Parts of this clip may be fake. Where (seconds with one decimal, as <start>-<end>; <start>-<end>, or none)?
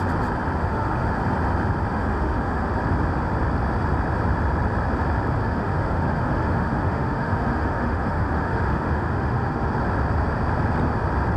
0.6-1.2; 1.9-2.7; 5.4-9.7